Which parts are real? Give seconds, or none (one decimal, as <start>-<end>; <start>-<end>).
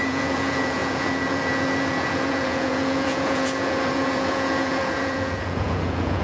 none